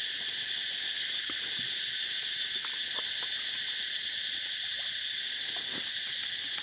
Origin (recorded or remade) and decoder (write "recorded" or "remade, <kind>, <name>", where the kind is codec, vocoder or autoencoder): recorded